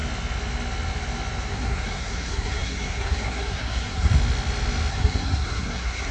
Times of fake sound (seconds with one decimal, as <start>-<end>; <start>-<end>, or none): 1.5-4.1; 4.9-6.1